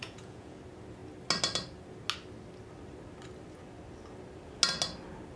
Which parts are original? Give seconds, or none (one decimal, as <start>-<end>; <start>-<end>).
0.6-5.4